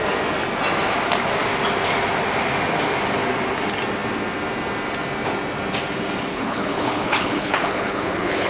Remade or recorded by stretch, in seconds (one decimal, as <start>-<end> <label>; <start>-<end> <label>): 0.0-6.3 recorded; 6.3-8.5 remade